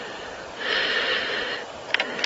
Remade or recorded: recorded